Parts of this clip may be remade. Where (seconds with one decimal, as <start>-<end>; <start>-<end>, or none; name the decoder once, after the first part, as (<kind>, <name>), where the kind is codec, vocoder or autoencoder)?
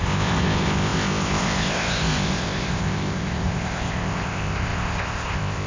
0.0-5.7 (codec, ZipCodec)